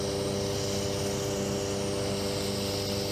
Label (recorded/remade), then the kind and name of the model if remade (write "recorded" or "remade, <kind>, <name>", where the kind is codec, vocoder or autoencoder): recorded